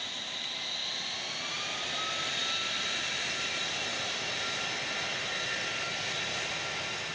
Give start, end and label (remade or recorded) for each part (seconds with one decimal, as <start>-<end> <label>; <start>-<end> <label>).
0.0-7.1 recorded